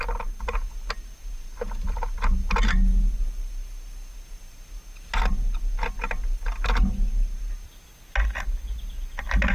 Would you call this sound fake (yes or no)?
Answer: no